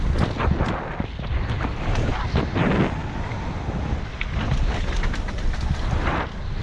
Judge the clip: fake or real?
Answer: real